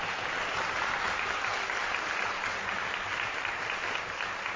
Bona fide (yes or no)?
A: yes